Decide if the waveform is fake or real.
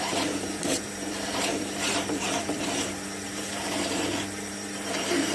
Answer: fake